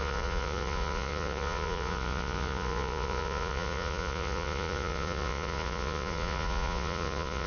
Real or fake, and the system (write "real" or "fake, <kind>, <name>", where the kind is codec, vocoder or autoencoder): fake, vocoder, Vocos